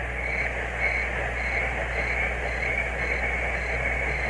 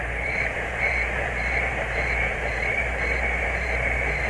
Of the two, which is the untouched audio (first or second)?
first